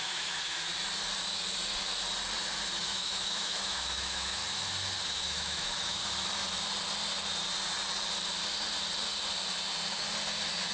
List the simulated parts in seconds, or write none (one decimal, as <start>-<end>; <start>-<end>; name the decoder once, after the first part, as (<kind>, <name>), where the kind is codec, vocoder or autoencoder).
0.0-0.7 (autoencoder, DAC-VAE); 2.8-4.4; 5.1-6.0